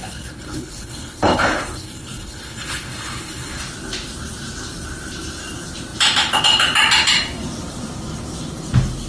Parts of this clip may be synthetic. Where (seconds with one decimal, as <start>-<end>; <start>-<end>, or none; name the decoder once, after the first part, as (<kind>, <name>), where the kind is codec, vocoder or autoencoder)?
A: 0.0-3.6 (codec, HILCodec)